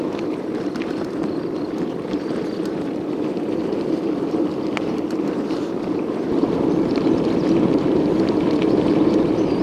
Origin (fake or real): fake